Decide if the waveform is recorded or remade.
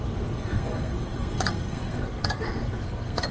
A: remade